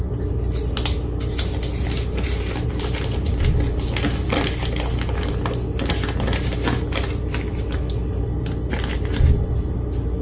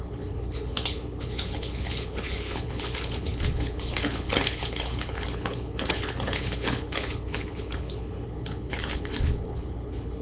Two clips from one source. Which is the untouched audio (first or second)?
first